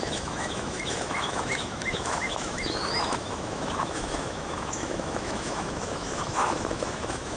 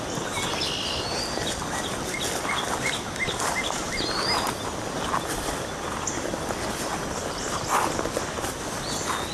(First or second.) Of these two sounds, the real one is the second